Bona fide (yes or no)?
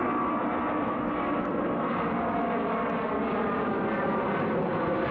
yes